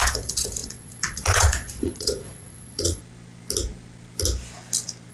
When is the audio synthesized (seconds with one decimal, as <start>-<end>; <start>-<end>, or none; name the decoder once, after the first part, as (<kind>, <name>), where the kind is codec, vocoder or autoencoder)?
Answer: 0.0-3.0 (vocoder, Vocos)